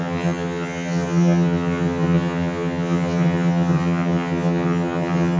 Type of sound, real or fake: fake